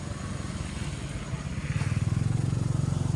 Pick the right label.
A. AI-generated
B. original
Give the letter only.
B